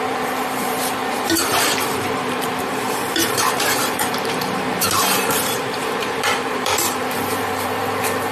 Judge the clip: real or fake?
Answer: fake